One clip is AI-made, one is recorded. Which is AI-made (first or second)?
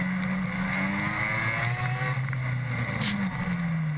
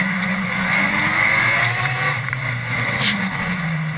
second